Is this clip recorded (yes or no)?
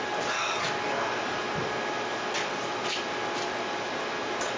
yes